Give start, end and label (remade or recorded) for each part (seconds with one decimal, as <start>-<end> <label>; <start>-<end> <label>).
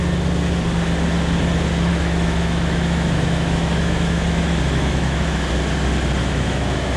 0.0-1.9 recorded; 1.9-5.5 remade; 5.5-6.2 recorded; 6.2-7.0 remade